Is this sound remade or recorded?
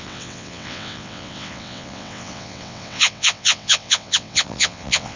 remade